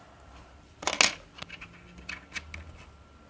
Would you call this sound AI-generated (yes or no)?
no